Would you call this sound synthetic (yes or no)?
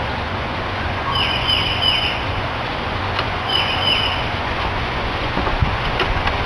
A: yes